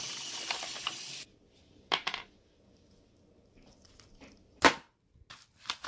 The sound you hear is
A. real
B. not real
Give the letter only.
A